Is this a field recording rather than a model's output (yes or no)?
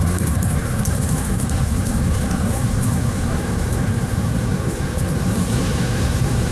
no